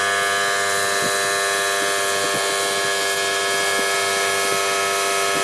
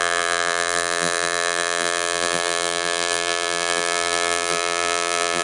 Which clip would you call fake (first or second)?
second